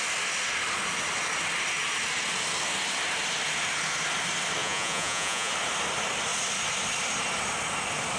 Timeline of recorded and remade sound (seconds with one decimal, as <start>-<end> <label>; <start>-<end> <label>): 0.0-4.6 recorded; 4.6-5.5 remade; 5.5-8.2 recorded